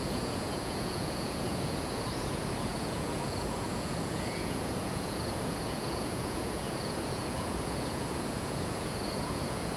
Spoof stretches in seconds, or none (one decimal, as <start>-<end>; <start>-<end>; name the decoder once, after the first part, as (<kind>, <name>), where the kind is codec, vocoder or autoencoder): 0.0-9.8 (vocoder, Vocos)